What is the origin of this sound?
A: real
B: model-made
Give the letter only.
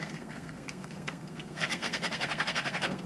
B